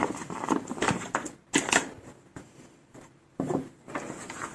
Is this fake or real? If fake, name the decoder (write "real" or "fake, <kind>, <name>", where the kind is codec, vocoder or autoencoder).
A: real